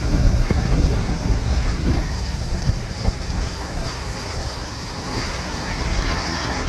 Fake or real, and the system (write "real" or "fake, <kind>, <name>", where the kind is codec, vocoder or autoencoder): fake, codec, SNAC